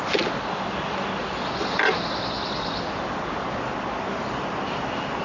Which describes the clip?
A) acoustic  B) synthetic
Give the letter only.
A